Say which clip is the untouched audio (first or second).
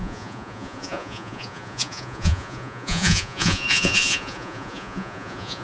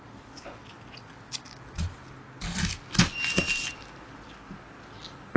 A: second